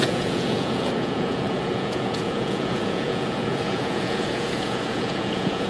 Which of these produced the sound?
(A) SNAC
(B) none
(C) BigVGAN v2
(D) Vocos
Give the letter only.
D